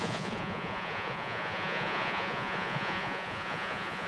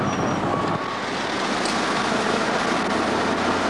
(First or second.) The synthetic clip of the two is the first